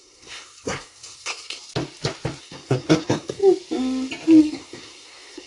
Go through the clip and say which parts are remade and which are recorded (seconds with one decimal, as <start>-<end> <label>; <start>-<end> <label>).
0.0-1.6 remade; 1.6-2.4 recorded; 2.4-3.4 remade; 3.4-4.4 recorded; 4.4-5.5 remade

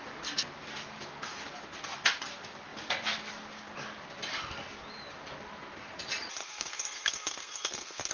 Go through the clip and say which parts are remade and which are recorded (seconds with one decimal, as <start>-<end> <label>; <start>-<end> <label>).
0.0-6.4 recorded; 6.4-8.1 remade